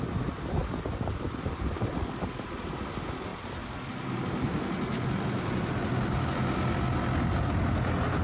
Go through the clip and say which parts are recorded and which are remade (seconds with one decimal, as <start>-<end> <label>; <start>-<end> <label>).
0.0-0.6 recorded; 0.6-1.9 remade; 1.9-8.2 recorded